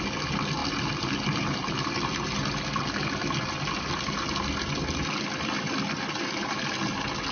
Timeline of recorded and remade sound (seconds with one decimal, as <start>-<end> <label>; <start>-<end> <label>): 0.0-7.3 recorded